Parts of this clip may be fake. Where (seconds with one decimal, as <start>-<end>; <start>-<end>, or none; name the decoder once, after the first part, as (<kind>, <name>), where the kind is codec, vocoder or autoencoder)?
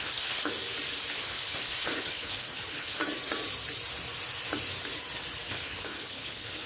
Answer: 0.0-0.4 (codec, HILCodec); 1.1-3.0; 5.5-6.7